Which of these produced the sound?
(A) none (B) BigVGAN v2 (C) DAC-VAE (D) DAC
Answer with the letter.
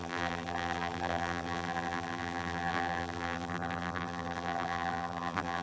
B